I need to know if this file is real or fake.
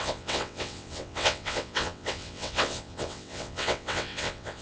fake